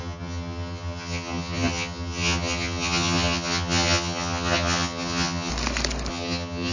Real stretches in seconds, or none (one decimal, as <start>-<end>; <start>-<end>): 5.5-6.1